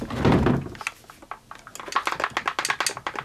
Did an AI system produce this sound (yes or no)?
no